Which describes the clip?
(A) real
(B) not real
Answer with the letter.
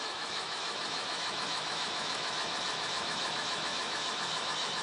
B